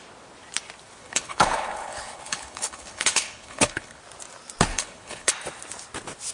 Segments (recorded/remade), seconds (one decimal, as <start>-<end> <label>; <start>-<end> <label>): 0.0-1.0 recorded; 1.0-4.0 remade; 4.0-4.7 recorded; 4.7-5.3 remade; 5.3-6.3 recorded